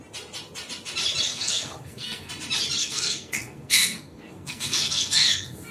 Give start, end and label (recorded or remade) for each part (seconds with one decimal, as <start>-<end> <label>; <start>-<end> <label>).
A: 0.0-1.3 recorded; 1.3-2.3 remade; 2.3-2.8 recorded; 2.8-5.7 remade